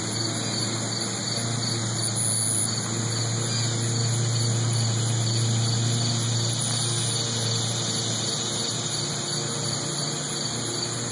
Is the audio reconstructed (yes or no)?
no